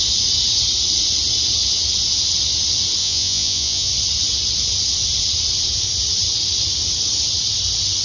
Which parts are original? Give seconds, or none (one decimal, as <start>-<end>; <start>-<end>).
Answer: 0.0-3.0; 3.9-8.0